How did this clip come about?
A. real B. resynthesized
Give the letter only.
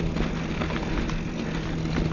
A